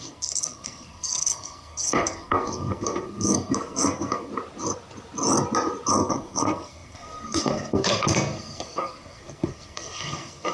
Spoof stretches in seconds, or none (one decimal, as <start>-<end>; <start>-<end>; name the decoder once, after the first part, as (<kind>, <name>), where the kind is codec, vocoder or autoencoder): 0.0-4.3 (codec, SNAC); 5.9-10.5